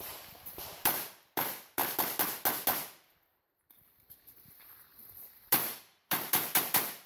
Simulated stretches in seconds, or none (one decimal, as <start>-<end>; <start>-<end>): 0.0-1.8; 4.5-7.1